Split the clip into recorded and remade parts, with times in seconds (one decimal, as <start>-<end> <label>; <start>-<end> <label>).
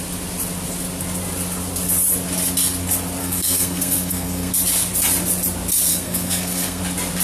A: 0.0-3.2 recorded; 3.2-4.5 remade; 4.5-5.9 recorded; 5.9-6.8 remade; 6.8-7.2 recorded